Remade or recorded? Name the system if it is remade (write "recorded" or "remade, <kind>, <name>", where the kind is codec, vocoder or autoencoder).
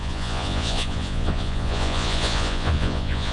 remade, vocoder, Vocos